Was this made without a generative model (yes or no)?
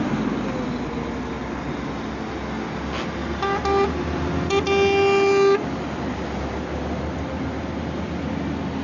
yes